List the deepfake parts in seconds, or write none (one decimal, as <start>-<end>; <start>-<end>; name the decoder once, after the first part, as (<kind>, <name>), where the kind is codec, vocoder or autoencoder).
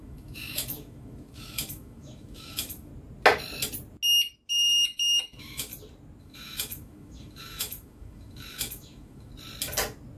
0.0-2.9 (autoencoder, DAC-VAE); 4.5-5.7; 6.2-9.3